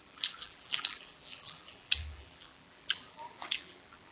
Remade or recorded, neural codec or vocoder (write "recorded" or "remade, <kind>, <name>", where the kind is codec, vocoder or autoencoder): remade, vocoder, BigVGAN v2